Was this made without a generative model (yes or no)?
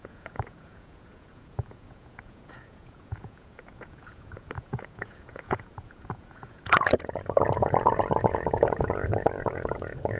no